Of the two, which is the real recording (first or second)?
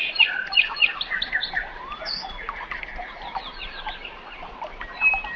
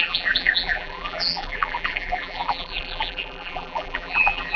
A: first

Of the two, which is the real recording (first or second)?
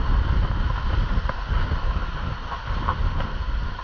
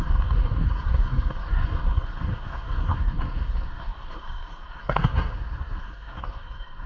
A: first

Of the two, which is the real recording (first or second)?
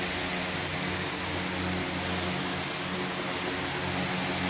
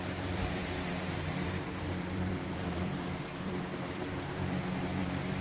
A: first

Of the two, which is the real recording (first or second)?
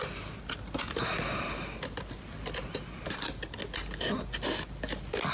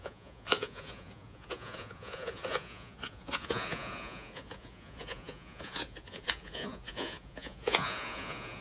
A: first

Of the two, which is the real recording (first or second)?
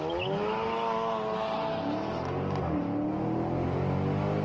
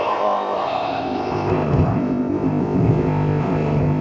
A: first